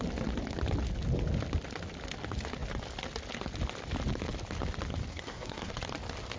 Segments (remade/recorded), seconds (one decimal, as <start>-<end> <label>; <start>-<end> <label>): 0.0-5.1 recorded; 5.1-5.7 remade; 5.7-6.4 recorded